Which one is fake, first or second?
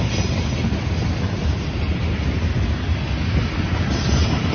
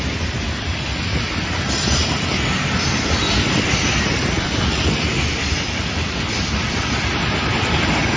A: second